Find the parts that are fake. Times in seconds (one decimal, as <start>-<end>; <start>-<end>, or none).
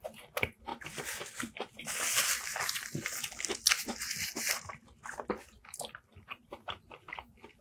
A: none